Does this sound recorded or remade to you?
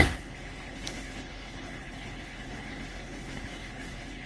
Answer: remade